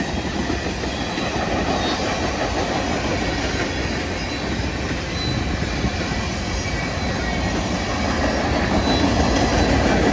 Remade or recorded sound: recorded